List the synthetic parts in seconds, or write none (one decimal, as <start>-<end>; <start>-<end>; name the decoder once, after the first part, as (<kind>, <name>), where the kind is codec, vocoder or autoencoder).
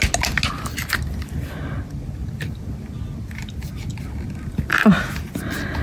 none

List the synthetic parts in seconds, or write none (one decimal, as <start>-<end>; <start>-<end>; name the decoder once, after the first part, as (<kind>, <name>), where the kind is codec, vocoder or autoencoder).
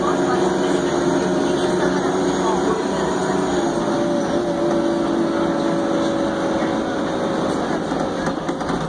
none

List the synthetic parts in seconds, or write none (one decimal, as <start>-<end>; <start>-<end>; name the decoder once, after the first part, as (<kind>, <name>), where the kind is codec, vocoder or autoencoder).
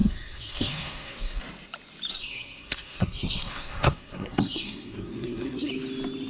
0.0-1.4 (codec, SNAC); 2.2-5.7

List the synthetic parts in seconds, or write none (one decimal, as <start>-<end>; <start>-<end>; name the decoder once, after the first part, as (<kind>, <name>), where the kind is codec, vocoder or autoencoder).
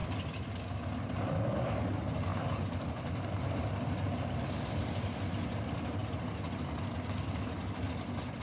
2.3-3.8 (vocoder, BigVGAN v2)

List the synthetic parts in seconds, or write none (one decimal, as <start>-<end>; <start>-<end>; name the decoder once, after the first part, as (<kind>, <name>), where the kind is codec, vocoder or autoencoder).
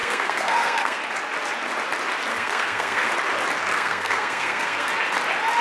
0.0-1.0 (codec, SNAC); 2.3-3.1; 3.7-4.9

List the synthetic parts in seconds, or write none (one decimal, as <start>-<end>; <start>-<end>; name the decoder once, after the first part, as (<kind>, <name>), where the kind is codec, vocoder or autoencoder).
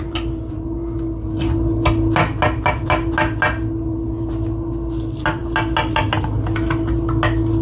none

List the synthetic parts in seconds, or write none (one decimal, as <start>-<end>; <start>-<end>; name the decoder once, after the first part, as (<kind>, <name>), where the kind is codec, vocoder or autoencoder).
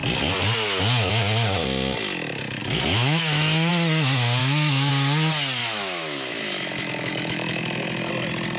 2.6-3.7 (autoencoder, DAC-VAE); 4.4-4.9; 5.6-8.1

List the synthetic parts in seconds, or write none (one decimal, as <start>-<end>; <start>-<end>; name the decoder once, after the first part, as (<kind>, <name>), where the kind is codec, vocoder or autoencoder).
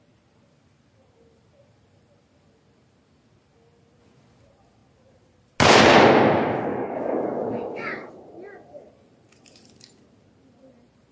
6.7-8.1 (codec, DAC)